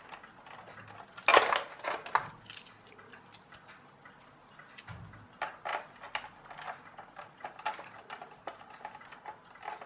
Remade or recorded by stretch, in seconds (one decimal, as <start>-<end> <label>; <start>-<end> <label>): 0.0-9.9 recorded